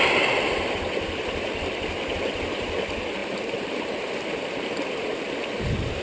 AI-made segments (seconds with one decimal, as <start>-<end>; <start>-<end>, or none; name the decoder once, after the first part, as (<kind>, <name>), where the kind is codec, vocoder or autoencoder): none